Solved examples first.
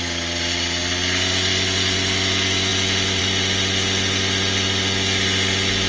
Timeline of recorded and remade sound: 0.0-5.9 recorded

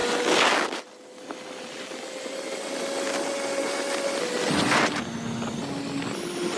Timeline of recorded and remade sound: 0.0-6.6 recorded

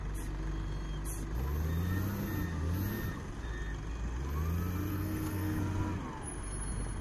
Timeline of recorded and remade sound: 0.0-4.9 recorded; 4.9-5.6 remade; 5.6-7.0 recorded

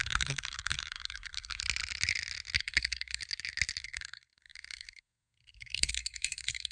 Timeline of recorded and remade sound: 0.0-1.6 remade; 1.6-2.6 recorded; 2.6-3.2 remade; 3.2-3.8 recorded; 3.8-6.7 remade

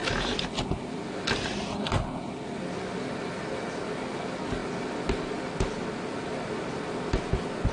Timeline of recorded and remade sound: 0.0-7.7 recorded

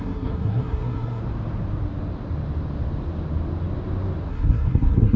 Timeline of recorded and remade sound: 0.0-1.2 remade; 1.2-4.3 recorded; 4.3-5.2 remade